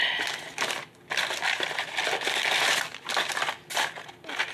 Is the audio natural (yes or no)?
yes